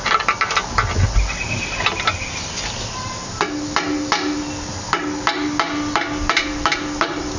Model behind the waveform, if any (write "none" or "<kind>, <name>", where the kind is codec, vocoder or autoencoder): none